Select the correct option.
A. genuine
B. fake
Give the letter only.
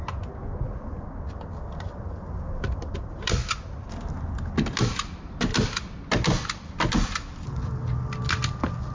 A